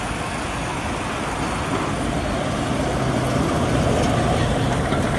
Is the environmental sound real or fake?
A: real